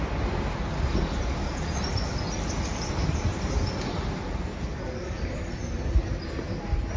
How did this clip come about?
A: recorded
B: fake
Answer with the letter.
A